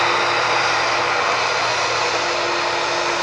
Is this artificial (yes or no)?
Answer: no